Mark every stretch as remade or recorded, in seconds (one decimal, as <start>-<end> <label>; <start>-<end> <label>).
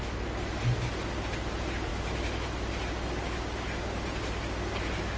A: 0.0-5.2 recorded